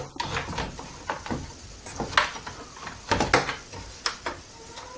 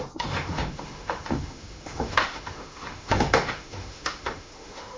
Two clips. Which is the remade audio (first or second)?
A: second